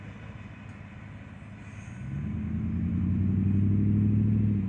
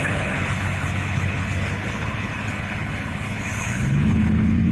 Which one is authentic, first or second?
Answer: first